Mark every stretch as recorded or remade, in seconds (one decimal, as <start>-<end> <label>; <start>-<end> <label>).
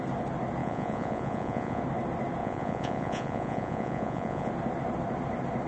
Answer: 0.0-0.6 recorded; 0.6-1.8 remade; 1.8-2.4 recorded; 2.4-4.5 remade; 4.5-5.7 recorded